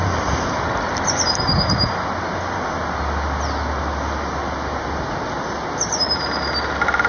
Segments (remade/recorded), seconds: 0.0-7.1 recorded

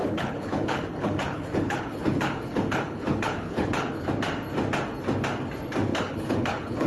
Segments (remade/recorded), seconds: 0.0-4.1 remade; 4.1-5.9 recorded; 5.9-6.9 remade

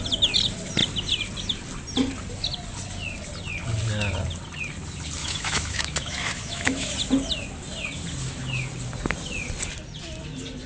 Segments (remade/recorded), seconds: 0.0-5.2 recorded; 5.2-6.9 remade; 6.9-10.7 recorded

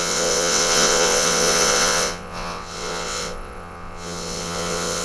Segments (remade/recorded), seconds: 0.0-5.0 remade